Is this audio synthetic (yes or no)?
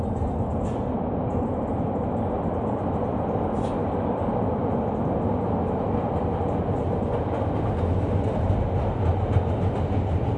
no